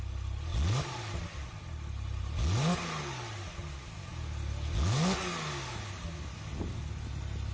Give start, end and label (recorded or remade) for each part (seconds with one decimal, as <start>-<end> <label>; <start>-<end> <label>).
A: 0.0-7.5 recorded